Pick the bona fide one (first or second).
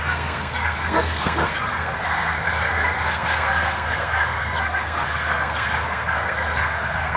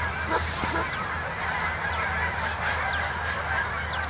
second